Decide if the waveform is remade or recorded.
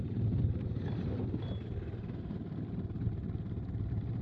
recorded